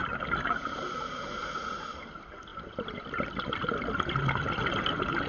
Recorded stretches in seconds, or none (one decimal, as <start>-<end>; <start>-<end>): 0.0-5.3